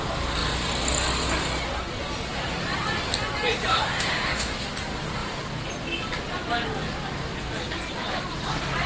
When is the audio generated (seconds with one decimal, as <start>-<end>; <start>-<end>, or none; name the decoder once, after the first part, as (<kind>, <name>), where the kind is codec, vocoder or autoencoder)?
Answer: 3.7-4.5 (autoencoder, DAC-VAE)